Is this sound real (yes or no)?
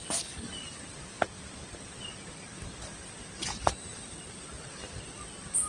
yes